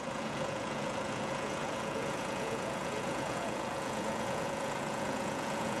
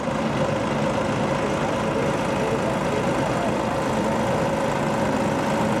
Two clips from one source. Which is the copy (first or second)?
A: first